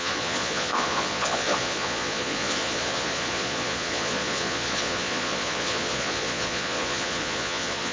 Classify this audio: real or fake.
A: fake